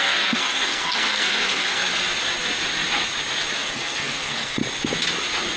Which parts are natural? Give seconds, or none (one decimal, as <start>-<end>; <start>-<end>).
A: 1.9-3.5; 4.6-5.6